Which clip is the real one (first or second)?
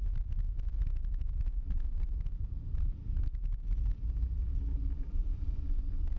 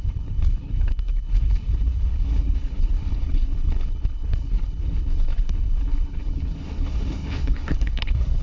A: first